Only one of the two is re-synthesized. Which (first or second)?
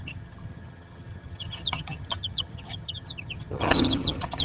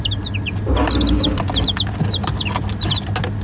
first